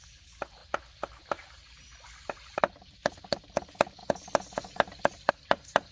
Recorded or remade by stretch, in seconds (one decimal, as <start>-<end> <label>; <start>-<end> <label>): 0.0-5.9 recorded